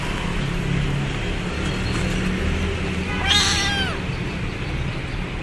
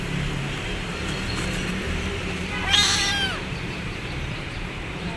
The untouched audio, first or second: first